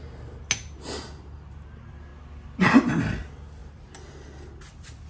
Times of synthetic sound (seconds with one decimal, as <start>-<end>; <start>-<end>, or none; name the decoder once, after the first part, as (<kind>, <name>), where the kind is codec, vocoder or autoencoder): none